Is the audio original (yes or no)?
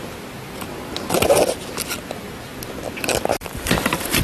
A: yes